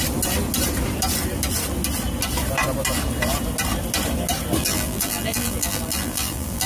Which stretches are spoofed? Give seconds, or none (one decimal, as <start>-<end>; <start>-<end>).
4.6-6.7

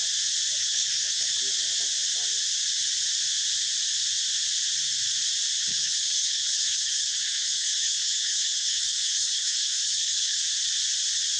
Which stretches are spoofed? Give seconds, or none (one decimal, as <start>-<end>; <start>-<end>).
0.6-1.3; 5.7-10.4

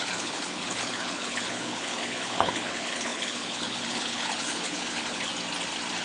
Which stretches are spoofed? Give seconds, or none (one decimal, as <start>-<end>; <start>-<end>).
0.0-5.3

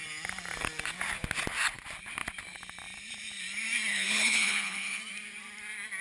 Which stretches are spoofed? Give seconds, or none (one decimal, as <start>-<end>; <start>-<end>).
3.9-5.0

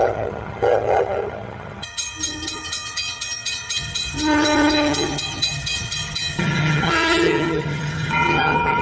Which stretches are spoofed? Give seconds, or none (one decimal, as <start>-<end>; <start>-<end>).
0.0-8.8

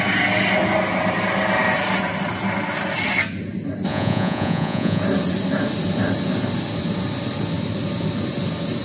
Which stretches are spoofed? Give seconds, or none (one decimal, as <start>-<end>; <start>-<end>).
3.9-5.0

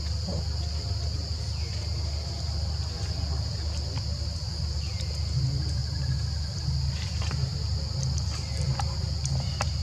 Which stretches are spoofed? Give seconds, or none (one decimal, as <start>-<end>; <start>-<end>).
none

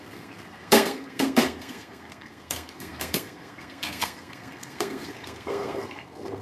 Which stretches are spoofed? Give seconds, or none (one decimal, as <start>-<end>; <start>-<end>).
0.0-6.4